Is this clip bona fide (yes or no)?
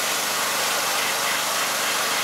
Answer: yes